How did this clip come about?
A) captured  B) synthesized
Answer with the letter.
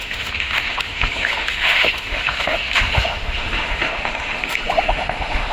B